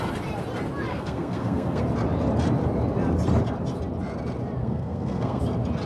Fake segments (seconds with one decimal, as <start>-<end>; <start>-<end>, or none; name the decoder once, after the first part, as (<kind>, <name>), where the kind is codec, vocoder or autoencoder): 0.9-1.8 (codec, SNAC); 4.6-5.4